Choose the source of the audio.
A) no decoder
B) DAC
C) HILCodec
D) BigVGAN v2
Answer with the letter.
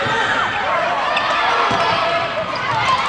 D